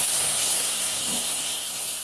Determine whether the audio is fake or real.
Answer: fake